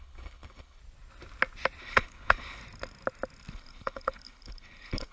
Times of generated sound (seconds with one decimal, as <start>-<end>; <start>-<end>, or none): 0.0-0.8; 1.8-2.6; 3.5-5.1